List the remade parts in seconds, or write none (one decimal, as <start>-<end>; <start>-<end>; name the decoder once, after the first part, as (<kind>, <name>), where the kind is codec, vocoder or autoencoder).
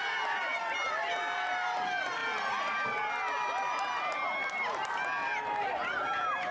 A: none